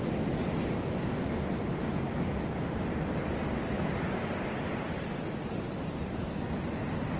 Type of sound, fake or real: real